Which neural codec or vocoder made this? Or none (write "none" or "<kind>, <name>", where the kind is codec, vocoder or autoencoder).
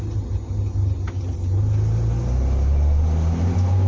none